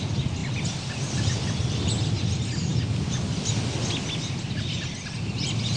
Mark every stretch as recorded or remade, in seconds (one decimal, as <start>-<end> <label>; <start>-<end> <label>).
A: 0.0-0.4 recorded; 0.4-1.4 remade; 1.4-5.8 recorded